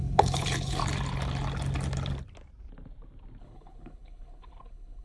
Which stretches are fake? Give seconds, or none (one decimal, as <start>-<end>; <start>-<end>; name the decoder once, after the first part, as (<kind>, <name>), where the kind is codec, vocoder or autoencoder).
0.0-0.8 (codec, HILCodec); 3.4-5.0